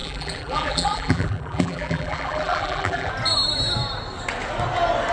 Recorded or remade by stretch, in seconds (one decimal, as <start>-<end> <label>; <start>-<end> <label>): 0.0-3.1 remade; 3.1-5.1 recorded